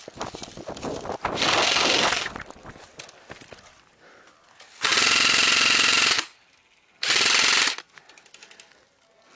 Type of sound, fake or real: real